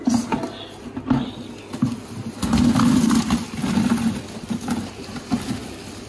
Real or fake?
real